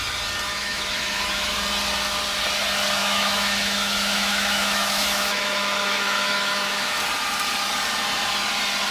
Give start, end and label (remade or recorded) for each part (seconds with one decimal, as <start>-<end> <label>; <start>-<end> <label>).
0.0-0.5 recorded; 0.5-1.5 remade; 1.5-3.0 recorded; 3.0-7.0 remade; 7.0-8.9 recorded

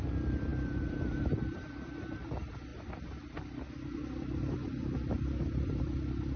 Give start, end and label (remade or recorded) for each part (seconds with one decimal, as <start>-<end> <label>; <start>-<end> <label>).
0.0-2.7 remade; 2.7-5.8 recorded; 5.8-6.4 remade

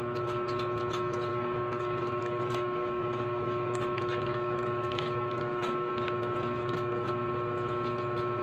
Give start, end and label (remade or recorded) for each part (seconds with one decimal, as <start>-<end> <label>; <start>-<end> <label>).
0.0-1.3 recorded; 1.3-5.9 remade; 5.9-6.6 recorded; 6.6-7.1 remade; 7.1-8.4 recorded